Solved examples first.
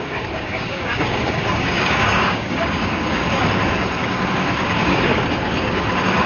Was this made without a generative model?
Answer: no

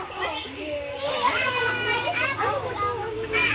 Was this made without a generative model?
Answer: no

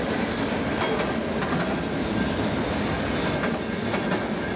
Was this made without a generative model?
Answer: yes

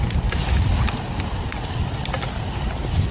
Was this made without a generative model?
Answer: yes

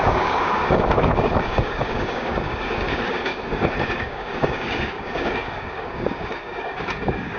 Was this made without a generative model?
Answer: no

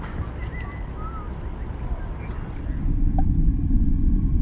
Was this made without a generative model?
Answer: yes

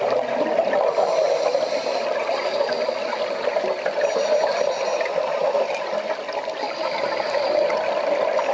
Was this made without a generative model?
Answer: yes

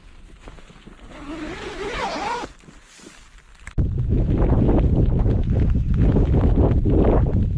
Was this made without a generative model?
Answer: yes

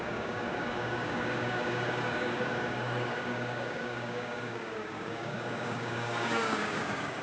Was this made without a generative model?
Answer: no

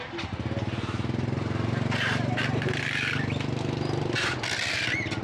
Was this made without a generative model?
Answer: yes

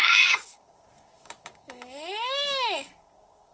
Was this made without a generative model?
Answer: no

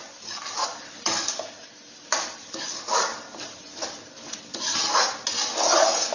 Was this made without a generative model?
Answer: yes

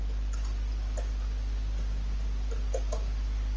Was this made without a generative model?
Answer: yes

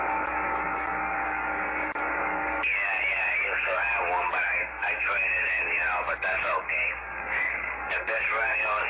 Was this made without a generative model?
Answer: no